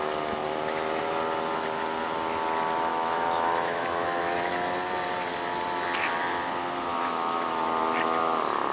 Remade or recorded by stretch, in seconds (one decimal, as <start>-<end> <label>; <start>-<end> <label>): 0.0-2.9 recorded; 2.9-4.5 remade; 4.5-6.9 recorded; 6.9-7.5 remade; 7.5-8.7 recorded